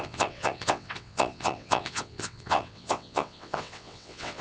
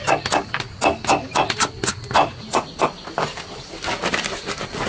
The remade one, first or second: first